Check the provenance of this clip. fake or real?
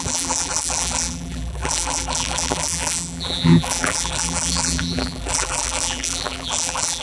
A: fake